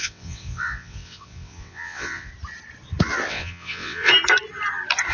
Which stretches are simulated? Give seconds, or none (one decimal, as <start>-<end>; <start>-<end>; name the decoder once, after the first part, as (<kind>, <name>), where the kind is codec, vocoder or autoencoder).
0.0-2.3 (vocoder, WaveNeXt); 3.3-4.1